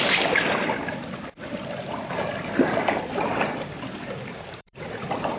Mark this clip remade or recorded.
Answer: remade